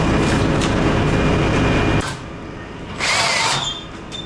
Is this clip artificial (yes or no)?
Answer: no